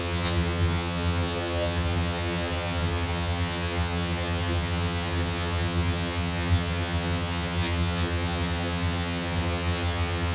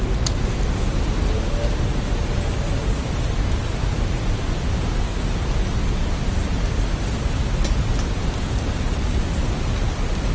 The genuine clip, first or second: second